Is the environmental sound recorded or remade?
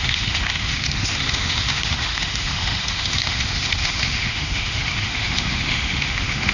remade